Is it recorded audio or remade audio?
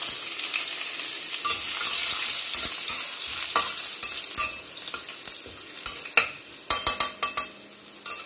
recorded